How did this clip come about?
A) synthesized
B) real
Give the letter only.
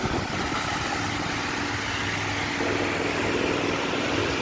B